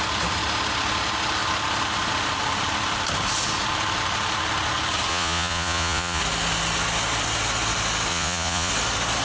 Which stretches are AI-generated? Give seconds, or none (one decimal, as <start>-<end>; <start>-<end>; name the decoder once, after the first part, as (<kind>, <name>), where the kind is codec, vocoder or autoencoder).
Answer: 5.1-6.2 (vocoder, Vocos); 8.1-8.7